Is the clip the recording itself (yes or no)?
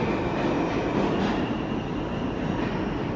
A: yes